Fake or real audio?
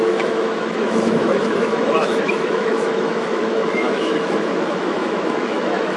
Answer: fake